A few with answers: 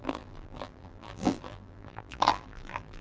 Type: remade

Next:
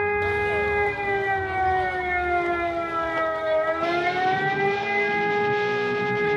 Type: recorded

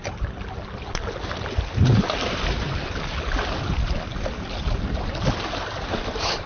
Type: recorded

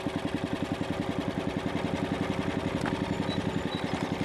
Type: recorded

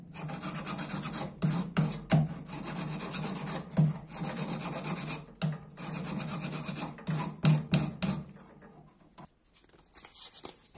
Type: recorded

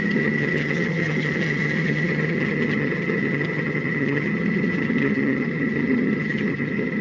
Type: remade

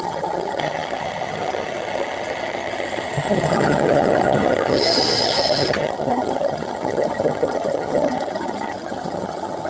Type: remade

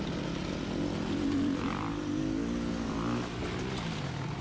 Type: recorded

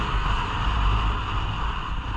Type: recorded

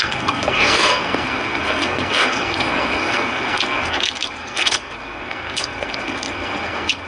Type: remade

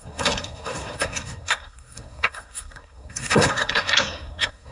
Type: remade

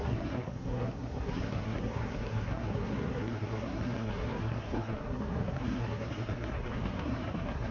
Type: remade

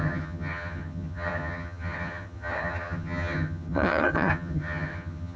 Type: remade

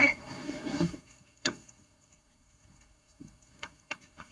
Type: remade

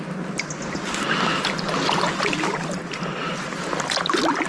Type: recorded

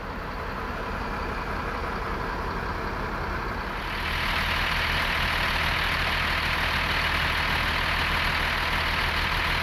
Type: recorded